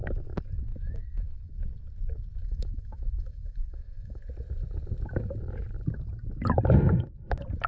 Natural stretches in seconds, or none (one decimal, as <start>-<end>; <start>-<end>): 0.0-0.7; 1.6-2.4; 4.2-7.7